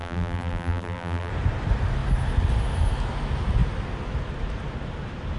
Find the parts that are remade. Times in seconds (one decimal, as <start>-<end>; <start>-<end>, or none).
0.0-1.3